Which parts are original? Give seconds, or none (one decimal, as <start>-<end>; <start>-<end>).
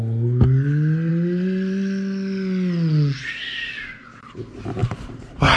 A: 0.0-4.8